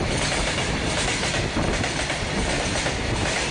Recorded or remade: recorded